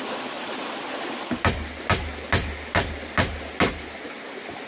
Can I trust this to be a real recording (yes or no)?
yes